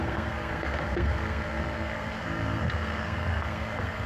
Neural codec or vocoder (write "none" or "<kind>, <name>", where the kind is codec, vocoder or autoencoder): codec, SNAC